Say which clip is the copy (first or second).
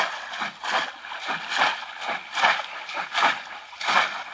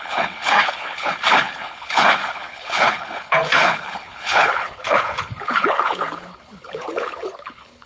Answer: second